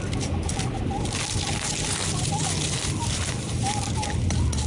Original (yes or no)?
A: yes